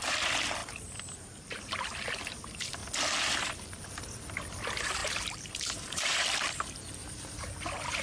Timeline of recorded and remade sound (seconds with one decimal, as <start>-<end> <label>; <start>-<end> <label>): 0.0-0.6 recorded; 0.6-1.6 remade; 1.6-5.0 recorded; 5.0-6.2 remade; 6.2-7.0 recorded; 7.0-7.5 remade; 7.5-8.0 recorded